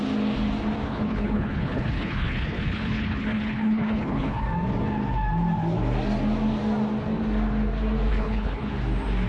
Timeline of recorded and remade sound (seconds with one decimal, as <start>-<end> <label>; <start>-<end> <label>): 0.0-0.9 recorded; 0.9-4.4 remade; 4.4-8.1 recorded; 8.1-8.7 remade; 8.7-9.3 recorded